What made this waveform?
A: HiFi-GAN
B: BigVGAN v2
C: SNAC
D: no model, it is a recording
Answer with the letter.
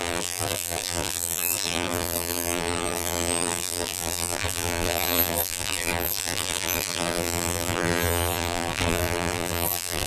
B